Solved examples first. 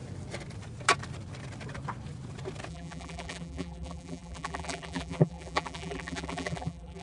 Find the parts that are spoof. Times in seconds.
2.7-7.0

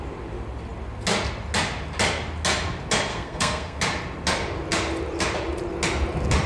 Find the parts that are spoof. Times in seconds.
3.1-3.8

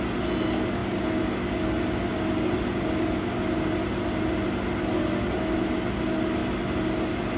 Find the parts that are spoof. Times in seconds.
none

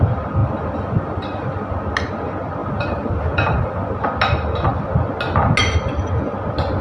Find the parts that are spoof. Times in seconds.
0.4-1.8; 2.6-3.9

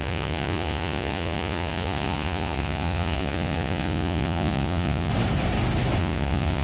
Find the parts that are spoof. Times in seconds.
0.0-5.1; 6.0-6.6

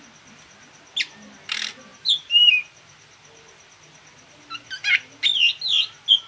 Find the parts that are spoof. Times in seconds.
none

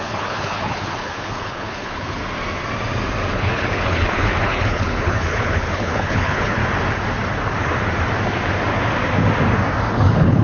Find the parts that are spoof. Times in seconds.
0.0-2.2; 3.3-6.6; 9.9-10.4